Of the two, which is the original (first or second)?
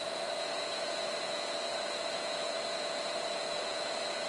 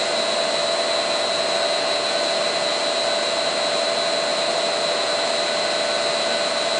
second